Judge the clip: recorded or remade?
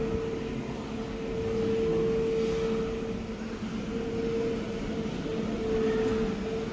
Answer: recorded